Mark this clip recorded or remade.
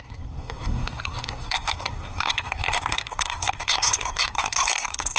remade